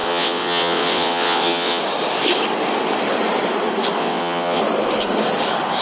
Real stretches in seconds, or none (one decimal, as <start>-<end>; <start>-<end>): 1.8-4.0; 4.6-5.8

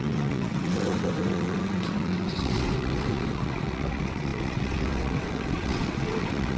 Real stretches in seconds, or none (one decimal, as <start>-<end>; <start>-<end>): none

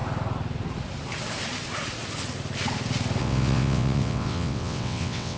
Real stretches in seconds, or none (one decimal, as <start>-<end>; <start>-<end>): 0.0-3.2

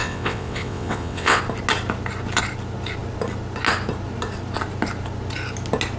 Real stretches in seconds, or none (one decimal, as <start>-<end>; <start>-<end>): 1.4-6.0